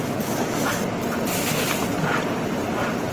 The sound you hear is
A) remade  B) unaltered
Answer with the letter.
B